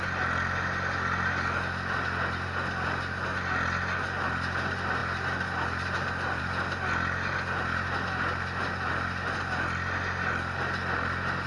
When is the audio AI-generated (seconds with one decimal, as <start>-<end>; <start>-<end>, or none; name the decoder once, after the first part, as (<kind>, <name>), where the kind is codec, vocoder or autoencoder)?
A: none